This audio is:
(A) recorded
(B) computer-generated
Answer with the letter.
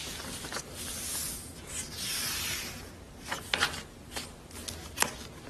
A